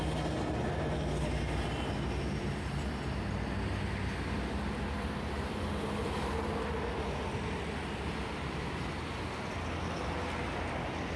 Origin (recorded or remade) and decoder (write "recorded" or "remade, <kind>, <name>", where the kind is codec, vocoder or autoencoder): recorded